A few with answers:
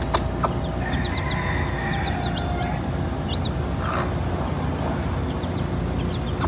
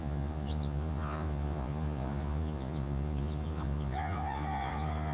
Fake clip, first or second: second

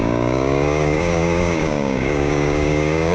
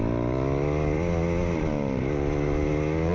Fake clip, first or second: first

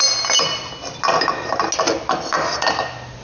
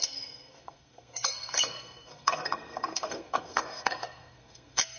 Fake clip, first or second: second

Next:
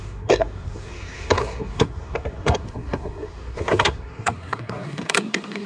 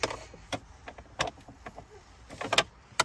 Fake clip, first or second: first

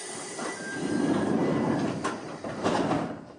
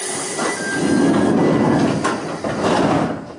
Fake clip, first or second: first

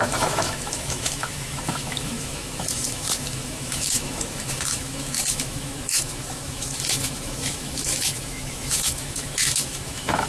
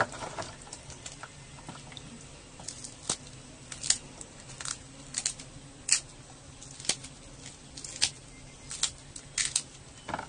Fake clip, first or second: first